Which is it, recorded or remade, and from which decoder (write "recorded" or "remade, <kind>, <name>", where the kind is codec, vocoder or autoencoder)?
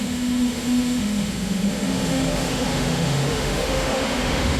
remade, autoencoder, DAC-VAE